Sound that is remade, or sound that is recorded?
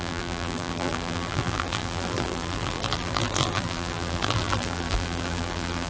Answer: remade